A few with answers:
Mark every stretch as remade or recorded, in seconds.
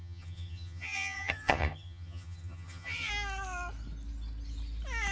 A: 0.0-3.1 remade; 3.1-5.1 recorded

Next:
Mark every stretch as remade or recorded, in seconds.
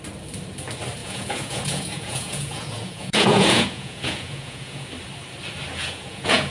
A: 0.0-1.0 recorded; 1.0-4.9 remade; 4.9-5.7 recorded; 5.7-6.5 remade